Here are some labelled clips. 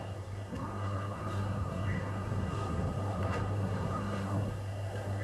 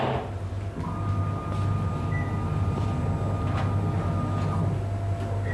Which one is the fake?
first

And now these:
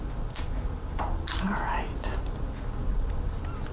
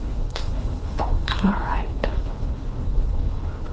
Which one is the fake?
second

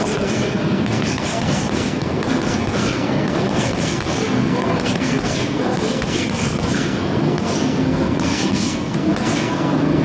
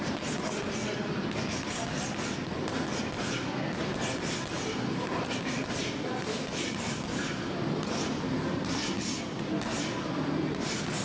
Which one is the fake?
first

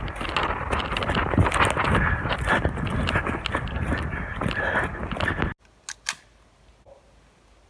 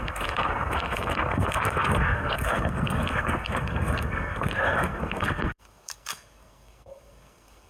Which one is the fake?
second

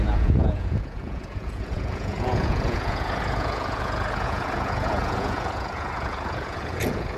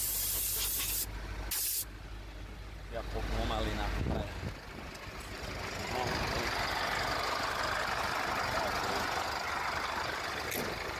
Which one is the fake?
first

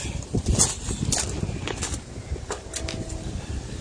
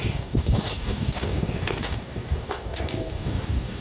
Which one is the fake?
second